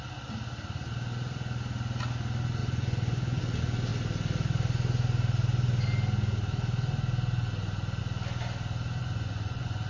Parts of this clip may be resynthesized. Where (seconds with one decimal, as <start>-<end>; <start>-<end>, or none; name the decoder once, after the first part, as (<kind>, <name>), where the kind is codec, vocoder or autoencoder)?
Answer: 2.6-3.4 (vocoder, Vocos); 9.0-9.9